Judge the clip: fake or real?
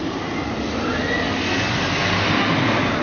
real